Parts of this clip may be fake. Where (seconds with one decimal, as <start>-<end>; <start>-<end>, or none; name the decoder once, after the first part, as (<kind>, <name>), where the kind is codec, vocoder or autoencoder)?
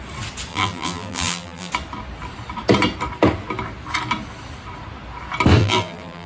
0.5-1.7 (vocoder, BigVGAN v2); 5.6-6.3